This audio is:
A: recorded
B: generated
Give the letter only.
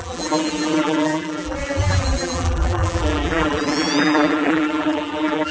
B